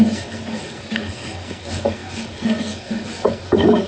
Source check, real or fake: fake